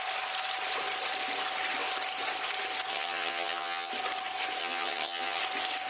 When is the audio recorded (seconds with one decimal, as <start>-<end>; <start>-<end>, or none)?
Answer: 0.0-2.9; 3.9-4.6; 5.4-5.9